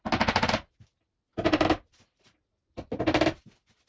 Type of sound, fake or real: real